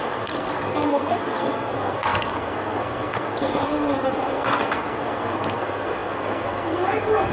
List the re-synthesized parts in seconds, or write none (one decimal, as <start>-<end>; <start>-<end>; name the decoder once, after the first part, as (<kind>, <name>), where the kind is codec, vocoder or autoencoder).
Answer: 0.0-7.3 (codec, SNAC)